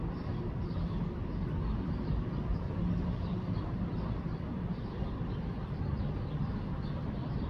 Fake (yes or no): yes